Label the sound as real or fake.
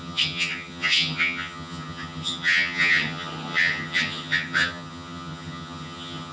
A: fake